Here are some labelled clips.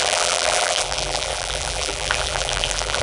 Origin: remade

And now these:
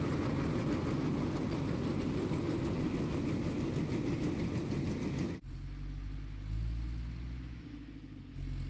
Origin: recorded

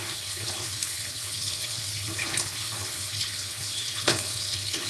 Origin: remade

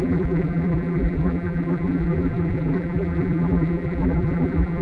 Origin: remade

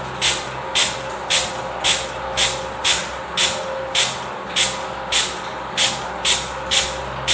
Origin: recorded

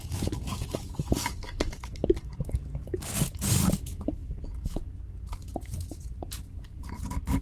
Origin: remade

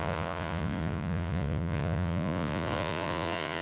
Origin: remade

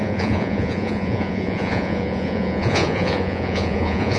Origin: remade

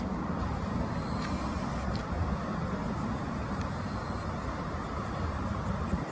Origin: recorded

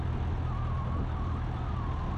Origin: recorded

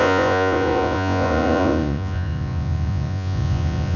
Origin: remade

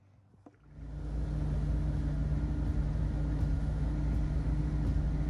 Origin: recorded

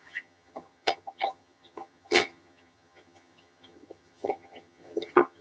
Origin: remade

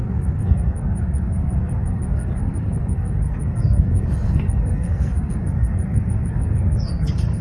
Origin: remade